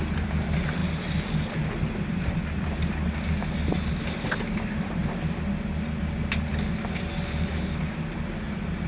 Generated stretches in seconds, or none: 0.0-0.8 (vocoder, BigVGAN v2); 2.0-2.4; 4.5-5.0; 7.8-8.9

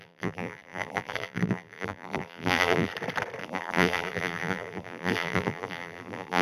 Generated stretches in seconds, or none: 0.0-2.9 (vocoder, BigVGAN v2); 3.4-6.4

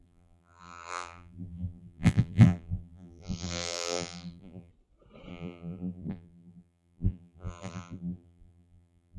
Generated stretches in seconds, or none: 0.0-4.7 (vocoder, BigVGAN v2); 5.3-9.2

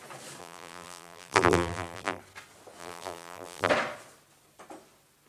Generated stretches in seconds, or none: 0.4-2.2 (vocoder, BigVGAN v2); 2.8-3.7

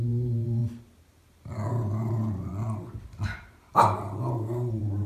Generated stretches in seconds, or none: 0.0-0.6 (vocoder, BigVGAN v2); 1.7-2.5; 3.7-5.1

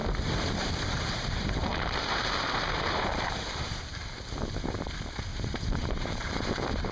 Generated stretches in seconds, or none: 0.0-3.8 (vocoder, BigVGAN v2); 5.3-6.4

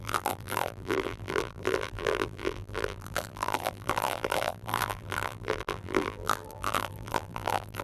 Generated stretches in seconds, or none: 0.0-7.8 (vocoder, BigVGAN v2)